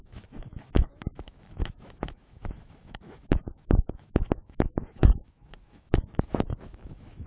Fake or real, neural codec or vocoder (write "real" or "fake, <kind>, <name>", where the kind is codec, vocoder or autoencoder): fake, autoencoder, DAC-VAE